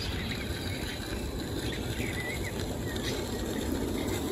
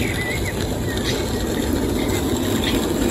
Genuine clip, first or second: second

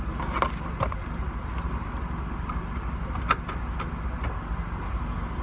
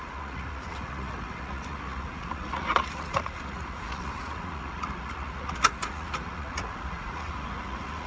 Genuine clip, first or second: first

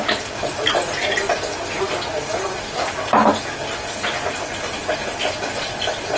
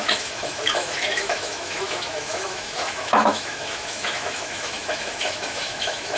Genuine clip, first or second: first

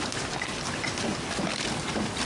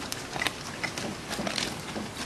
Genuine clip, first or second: second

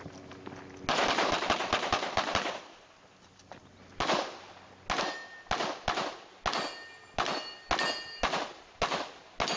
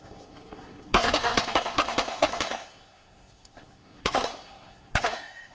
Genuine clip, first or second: first